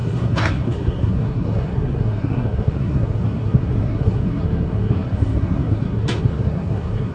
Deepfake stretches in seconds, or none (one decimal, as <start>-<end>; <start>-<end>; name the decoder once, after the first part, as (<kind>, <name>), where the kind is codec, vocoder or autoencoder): 0.0-7.1 (codec, SNAC)